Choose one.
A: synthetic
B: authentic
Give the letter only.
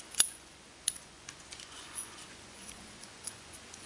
A